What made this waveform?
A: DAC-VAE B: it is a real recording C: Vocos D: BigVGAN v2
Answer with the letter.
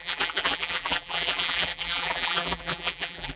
D